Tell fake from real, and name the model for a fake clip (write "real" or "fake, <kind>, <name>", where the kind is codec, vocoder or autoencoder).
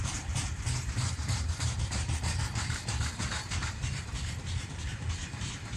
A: fake, vocoder, BigVGAN v2